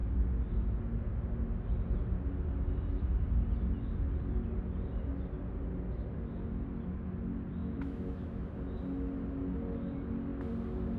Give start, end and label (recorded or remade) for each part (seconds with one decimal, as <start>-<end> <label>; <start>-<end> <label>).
0.0-7.6 recorded; 7.6-8.5 remade; 8.5-11.0 recorded